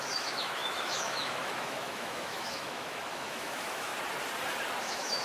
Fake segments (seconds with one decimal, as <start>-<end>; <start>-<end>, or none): 0.0-3.9; 4.8-5.2